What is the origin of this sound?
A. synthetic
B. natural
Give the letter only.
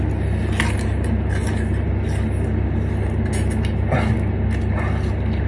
B